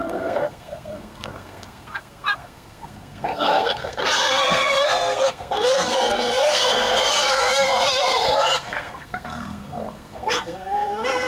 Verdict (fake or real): fake